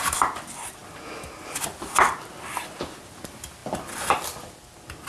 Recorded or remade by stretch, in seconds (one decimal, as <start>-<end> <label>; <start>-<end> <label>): 0.0-5.1 recorded